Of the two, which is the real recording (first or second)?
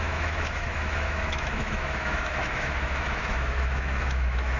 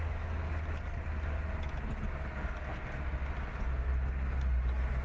second